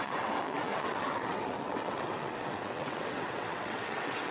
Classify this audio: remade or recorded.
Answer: remade